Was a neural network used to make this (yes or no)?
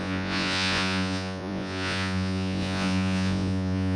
yes